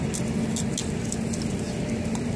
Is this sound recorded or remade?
recorded